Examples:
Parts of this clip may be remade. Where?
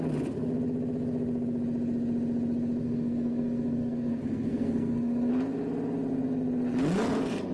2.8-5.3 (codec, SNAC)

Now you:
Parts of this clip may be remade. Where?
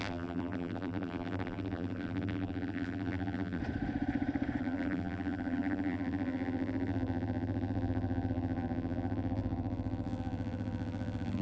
0.0-3.6 (vocoder, BigVGAN v2); 4.6-11.4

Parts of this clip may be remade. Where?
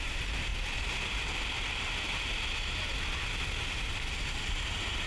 0.0-0.5 (vocoder, BigVGAN v2); 3.6-5.1